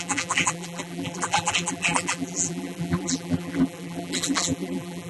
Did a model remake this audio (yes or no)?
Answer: yes